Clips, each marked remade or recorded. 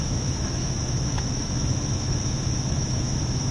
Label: remade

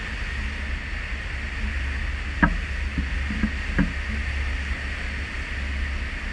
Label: recorded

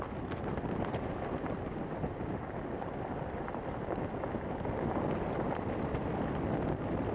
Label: recorded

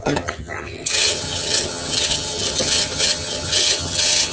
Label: remade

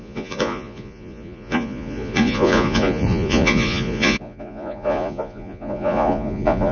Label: remade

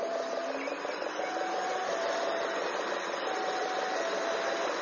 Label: recorded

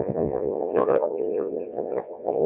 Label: remade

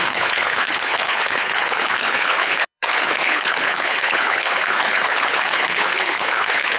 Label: remade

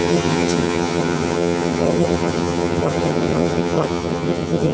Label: remade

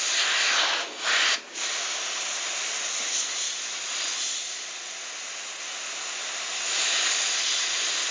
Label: recorded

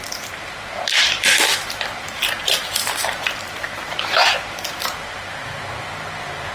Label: remade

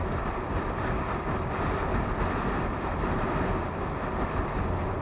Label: recorded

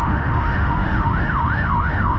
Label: remade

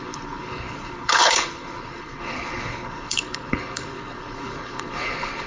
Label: remade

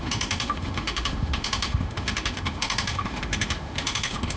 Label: remade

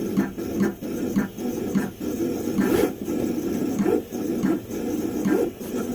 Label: recorded